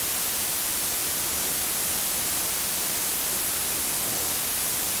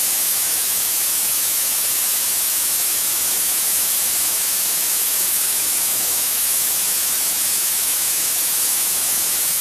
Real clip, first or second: first